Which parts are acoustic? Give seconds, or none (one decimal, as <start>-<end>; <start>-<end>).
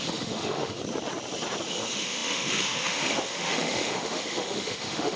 0.8-1.7